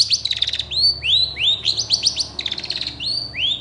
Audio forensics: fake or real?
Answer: real